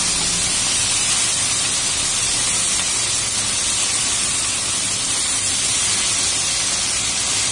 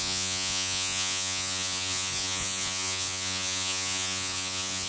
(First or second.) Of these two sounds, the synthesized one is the second